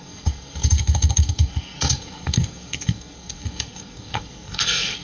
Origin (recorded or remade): remade